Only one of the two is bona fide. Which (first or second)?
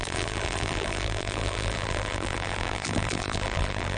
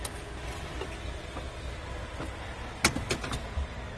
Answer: second